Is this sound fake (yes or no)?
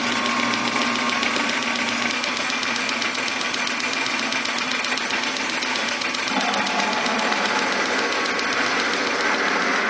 no